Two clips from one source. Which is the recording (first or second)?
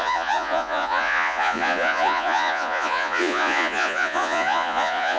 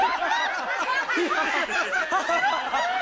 second